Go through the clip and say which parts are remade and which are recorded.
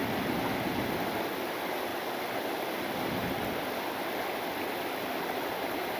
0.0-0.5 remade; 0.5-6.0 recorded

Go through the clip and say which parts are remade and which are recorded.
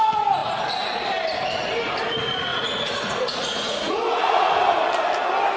0.0-2.5 recorded; 2.5-4.6 remade; 4.6-5.6 recorded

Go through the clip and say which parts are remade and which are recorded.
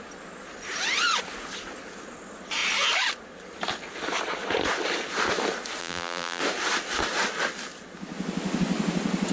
0.0-5.8 recorded; 5.8-6.4 remade; 6.4-9.3 recorded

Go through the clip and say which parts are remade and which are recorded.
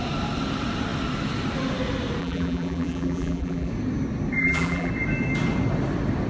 0.0-2.2 recorded; 2.2-3.7 remade; 3.7-4.4 recorded; 4.4-4.9 remade; 4.9-6.3 recorded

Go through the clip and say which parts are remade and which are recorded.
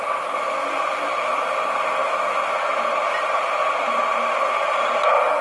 0.0-5.4 recorded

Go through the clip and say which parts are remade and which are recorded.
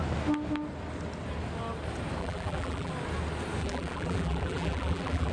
0.0-2.2 recorded; 2.2-2.9 remade; 2.9-3.6 recorded; 3.6-5.3 remade